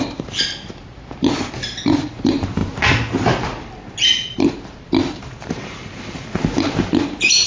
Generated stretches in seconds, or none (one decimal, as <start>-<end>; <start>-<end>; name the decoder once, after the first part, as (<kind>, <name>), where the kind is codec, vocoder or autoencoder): none